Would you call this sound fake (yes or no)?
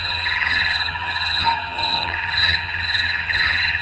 yes